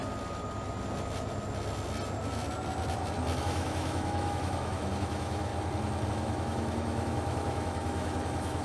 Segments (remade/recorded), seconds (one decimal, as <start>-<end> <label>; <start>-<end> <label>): 0.0-3.4 recorded; 3.4-5.5 remade; 5.5-6.1 recorded; 6.1-8.6 remade